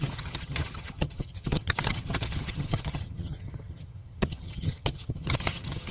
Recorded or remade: remade